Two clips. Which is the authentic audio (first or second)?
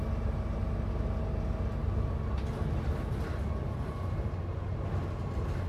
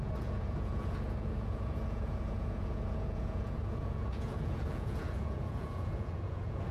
first